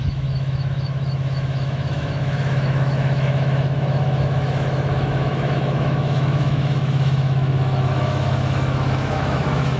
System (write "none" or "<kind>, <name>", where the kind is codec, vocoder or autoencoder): autoencoder, DAC-VAE